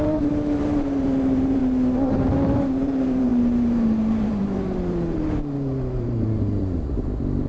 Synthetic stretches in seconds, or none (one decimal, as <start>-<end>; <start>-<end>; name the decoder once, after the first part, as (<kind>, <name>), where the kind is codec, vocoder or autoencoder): 0.0-1.6 (vocoder, BigVGAN v2); 2.1-7.5